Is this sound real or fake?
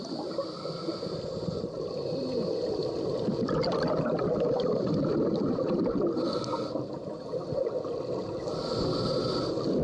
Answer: real